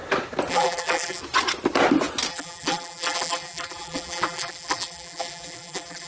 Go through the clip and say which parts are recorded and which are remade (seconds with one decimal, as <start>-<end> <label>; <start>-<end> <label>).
0.0-0.5 recorded; 0.5-1.2 remade; 1.2-2.3 recorded; 2.3-6.1 remade